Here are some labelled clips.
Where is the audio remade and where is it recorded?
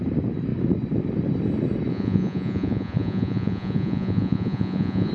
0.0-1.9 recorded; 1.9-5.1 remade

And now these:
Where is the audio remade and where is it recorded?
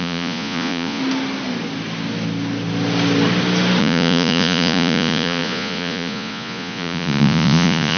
0.0-1.0 remade; 1.0-3.8 recorded; 3.8-8.0 remade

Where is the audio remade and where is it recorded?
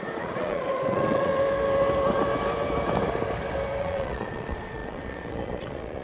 0.0-1.3 remade; 1.3-3.8 recorded; 3.8-6.0 remade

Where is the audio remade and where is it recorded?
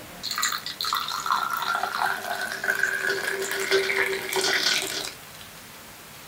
0.0-6.3 recorded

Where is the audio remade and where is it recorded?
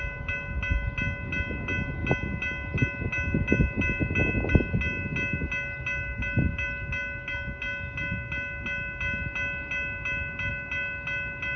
0.0-11.6 recorded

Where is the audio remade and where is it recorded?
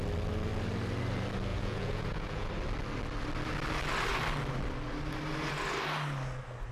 0.0-1.5 recorded; 1.5-2.5 remade; 2.5-6.7 recorded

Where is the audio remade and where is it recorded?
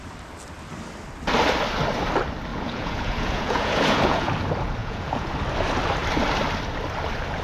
0.0-2.5 recorded; 2.5-4.3 remade; 4.3-4.8 recorded; 4.8-5.3 remade; 5.3-7.4 recorded